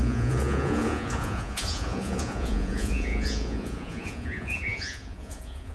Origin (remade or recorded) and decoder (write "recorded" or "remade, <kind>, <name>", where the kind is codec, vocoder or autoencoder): remade, vocoder, Vocos